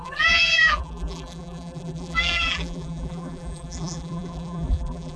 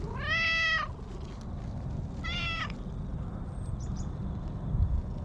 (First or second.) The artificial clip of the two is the first